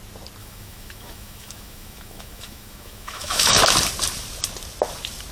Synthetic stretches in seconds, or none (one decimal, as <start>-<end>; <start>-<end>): 0.4-3.6